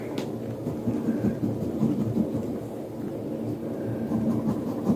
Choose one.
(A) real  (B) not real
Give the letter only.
A